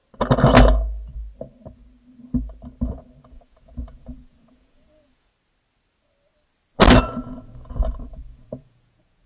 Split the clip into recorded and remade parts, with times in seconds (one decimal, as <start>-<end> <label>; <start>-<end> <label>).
0.0-3.3 recorded; 3.3-5.3 remade; 5.3-7.0 recorded; 7.0-9.3 remade